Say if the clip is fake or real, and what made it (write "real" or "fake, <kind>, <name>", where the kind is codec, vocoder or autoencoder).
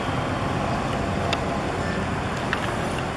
real